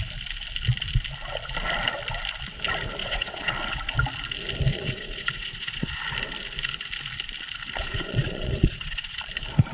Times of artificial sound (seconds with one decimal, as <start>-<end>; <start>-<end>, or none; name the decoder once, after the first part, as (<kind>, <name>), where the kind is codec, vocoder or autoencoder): 3.0-3.5 (vocoder, Vocos); 4.7-5.9; 7.8-9.2